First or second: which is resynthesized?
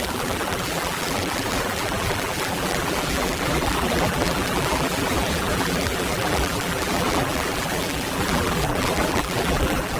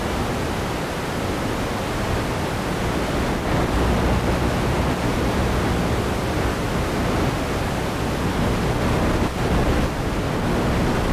first